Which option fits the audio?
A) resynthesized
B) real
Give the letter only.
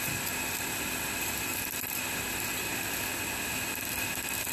B